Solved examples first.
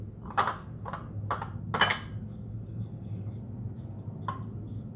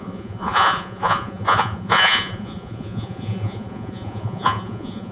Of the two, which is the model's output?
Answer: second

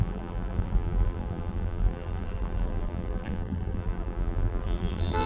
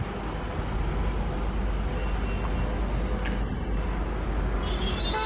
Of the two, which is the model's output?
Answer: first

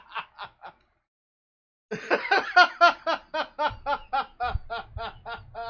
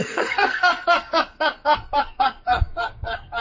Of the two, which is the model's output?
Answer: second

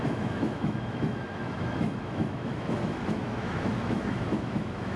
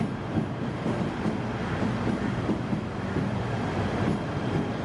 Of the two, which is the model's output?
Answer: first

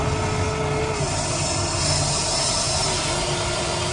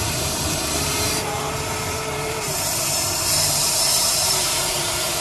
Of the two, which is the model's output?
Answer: second